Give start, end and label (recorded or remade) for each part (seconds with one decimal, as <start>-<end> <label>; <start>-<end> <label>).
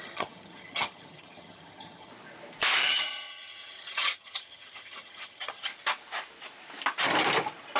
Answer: 0.0-2.1 remade; 2.1-2.8 recorded; 2.8-5.7 remade; 5.7-7.8 recorded